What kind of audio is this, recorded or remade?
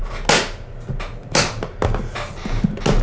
recorded